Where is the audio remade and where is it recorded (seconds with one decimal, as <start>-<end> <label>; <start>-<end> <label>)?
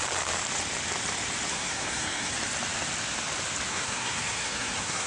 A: 0.0-1.5 recorded; 1.5-2.3 remade; 2.3-3.7 recorded; 3.7-5.1 remade